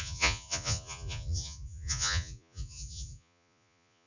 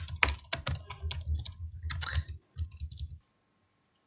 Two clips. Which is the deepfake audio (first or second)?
first